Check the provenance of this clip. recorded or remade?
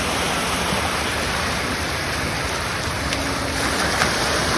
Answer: recorded